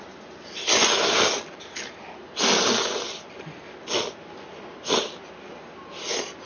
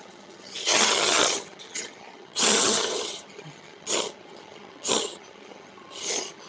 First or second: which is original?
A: first